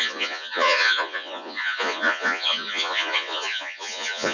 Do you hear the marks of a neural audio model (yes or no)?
yes